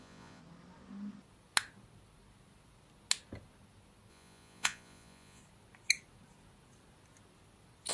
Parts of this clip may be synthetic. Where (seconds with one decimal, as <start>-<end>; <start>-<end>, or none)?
0.0-0.4; 4.1-5.4